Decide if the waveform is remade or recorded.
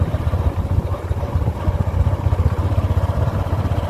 recorded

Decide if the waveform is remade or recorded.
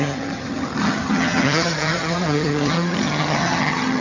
remade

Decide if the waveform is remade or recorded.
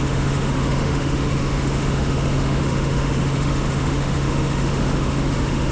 remade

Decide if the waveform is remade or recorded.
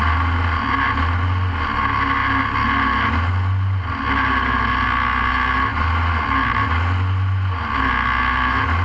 recorded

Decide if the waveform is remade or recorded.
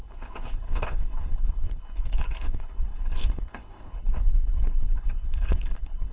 remade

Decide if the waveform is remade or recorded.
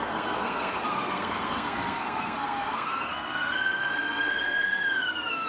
remade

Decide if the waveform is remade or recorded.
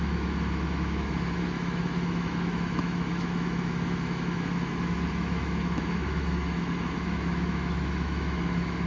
remade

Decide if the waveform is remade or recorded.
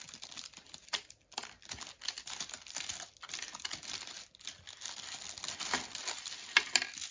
recorded